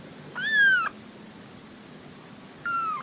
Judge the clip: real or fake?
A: real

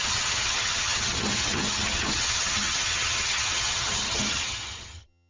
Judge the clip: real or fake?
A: fake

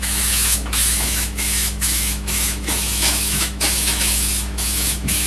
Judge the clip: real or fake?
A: fake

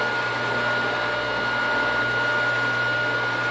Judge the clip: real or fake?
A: real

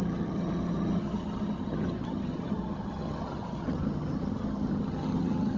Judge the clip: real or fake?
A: fake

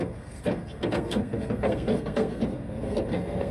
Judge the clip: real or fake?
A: fake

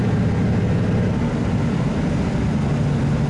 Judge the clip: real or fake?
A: real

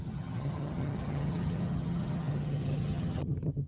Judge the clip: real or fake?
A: fake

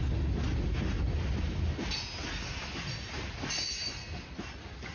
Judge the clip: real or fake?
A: real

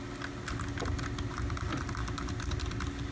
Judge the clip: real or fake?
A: real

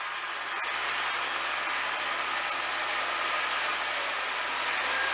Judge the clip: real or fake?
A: real